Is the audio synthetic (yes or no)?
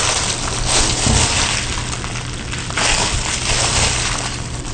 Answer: no